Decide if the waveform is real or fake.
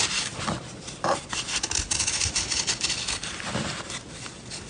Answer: real